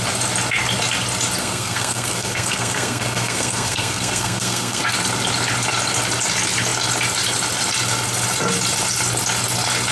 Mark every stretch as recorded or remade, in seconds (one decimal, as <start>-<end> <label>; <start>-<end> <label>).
0.0-1.4 recorded; 1.4-4.8 remade; 4.8-9.9 recorded